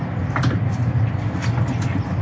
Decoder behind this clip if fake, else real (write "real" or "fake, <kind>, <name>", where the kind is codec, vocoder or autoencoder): real